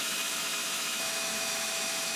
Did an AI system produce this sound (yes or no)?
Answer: yes